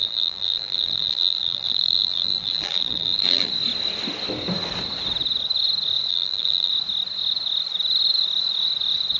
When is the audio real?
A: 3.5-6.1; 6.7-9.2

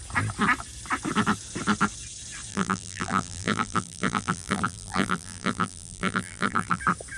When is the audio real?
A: 0.0-2.5; 6.8-7.2